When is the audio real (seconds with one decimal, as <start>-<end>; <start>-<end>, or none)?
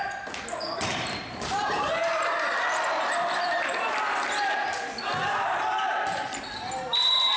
0.0-2.0; 6.4-7.4